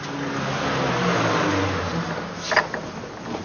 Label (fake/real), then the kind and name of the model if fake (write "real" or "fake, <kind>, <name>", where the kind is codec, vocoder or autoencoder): real